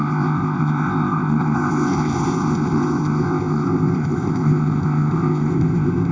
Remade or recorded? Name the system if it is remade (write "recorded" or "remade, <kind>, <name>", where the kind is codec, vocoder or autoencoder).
remade, codec, ZipCodec